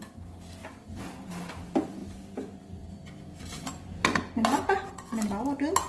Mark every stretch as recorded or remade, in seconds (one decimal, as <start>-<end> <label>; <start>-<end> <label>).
0.0-3.6 recorded; 3.6-5.1 remade; 5.1-5.9 recorded